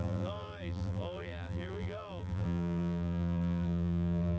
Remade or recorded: remade